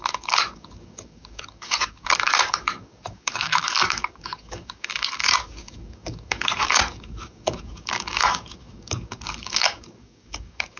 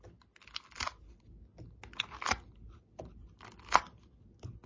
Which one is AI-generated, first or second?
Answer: first